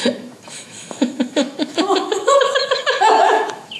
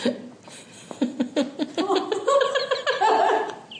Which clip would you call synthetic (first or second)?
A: first